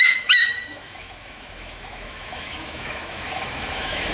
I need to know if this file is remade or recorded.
remade